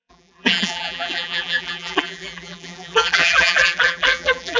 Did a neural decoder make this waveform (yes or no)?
yes